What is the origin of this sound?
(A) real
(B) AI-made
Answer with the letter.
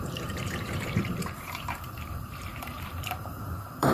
B